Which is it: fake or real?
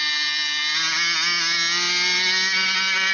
real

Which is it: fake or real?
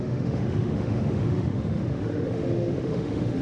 fake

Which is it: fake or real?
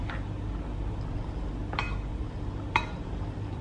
real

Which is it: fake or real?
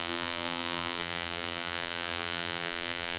fake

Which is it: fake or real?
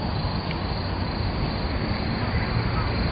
real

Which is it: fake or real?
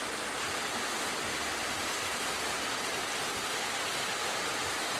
real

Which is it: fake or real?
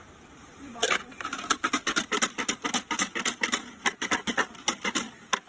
real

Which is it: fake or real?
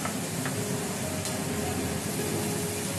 real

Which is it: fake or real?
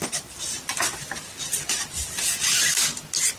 real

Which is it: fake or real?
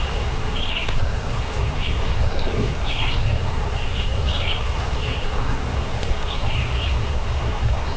fake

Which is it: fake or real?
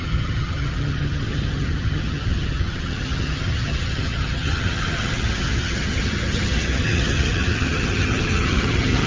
fake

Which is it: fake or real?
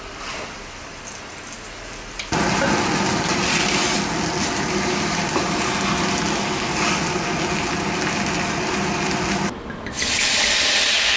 real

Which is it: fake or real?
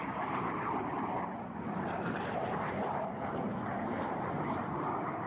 fake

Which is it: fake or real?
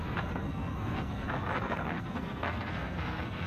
fake